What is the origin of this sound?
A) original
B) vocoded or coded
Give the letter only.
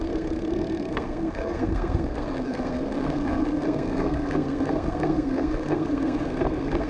B